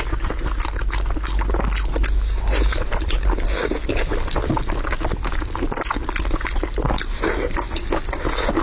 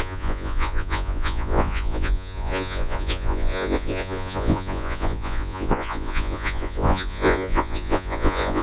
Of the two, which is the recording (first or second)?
first